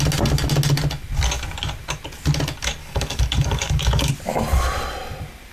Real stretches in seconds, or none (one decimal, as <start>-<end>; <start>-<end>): 0.0-2.8; 4.1-5.5

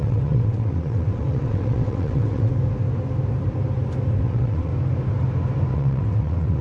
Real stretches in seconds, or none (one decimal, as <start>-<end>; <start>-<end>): 2.5-4.2; 4.7-5.7

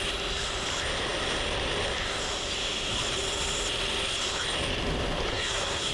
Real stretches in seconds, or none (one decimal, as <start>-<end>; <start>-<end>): 0.0-5.3

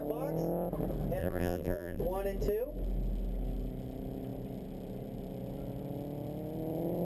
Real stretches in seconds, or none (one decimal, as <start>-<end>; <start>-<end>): 0.0-1.2; 2.0-7.0

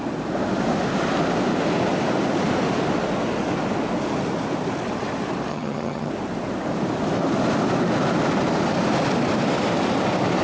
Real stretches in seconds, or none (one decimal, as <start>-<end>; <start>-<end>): 0.0-5.5; 6.1-10.4

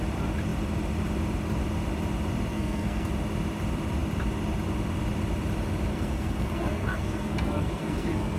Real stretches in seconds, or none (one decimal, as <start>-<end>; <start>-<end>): 0.0-2.5; 3.1-5.9

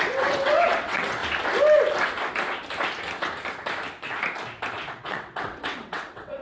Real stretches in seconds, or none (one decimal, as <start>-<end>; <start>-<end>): 1.2-4.9